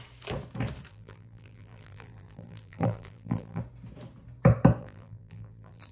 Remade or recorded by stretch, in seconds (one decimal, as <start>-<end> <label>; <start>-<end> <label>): 0.0-0.9 recorded; 0.9-3.6 remade; 3.6-4.8 recorded; 4.8-5.9 remade